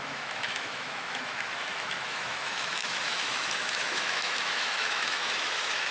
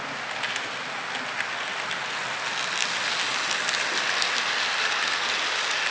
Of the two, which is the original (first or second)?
second